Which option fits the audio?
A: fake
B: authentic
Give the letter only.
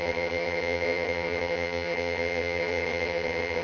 A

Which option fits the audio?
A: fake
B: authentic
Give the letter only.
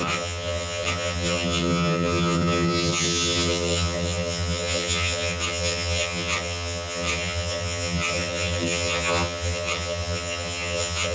A